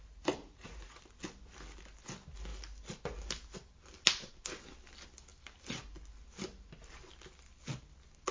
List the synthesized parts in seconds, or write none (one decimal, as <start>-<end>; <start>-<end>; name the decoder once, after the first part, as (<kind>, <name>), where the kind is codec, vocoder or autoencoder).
0.4-1.0 (vocoder, Vocos)

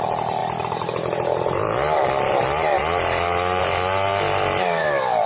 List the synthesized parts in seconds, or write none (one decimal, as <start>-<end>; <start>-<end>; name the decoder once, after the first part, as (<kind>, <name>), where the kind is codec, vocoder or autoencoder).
0.4-3.6 (vocoder, BigVGAN v2); 4.1-5.3

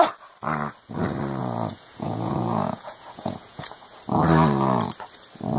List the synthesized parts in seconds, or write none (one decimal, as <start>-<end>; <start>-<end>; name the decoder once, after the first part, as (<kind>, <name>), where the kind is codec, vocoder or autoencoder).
1.4-4.0 (vocoder, Vocos)

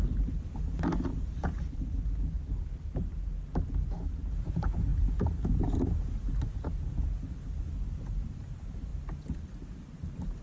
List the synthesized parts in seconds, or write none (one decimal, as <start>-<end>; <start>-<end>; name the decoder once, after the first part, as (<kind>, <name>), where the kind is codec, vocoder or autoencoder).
1.1-2.7 (vocoder, BigVGAN v2); 4.9-6.3; 8.9-10.4

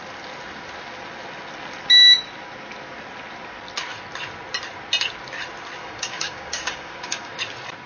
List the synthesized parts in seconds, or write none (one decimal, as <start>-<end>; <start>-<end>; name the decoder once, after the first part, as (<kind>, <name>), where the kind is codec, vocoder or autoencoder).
5.8-7.4 (codec, DAC)

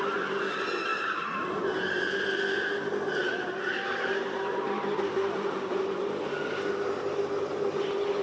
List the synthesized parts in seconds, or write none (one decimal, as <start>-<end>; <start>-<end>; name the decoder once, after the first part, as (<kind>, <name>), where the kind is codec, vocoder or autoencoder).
0.9-2.1 (vocoder, BigVGAN v2); 3.2-6.1